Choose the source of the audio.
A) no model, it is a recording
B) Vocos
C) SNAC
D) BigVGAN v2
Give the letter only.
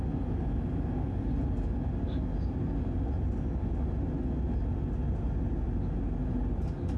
A